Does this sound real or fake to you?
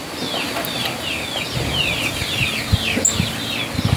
real